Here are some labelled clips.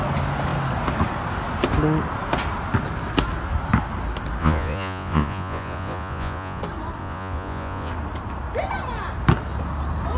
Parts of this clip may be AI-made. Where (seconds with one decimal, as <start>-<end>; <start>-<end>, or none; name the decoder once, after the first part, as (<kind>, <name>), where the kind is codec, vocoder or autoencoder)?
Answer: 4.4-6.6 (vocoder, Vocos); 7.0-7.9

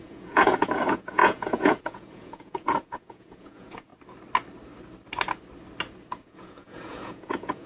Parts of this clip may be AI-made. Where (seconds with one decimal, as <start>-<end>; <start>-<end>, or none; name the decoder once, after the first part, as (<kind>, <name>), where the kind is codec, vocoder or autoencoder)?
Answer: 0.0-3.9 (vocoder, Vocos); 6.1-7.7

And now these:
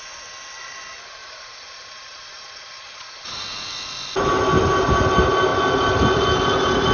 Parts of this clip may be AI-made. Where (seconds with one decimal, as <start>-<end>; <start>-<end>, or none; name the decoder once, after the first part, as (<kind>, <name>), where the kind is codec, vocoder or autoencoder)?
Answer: 1.2-3.4 (vocoder, Vocos)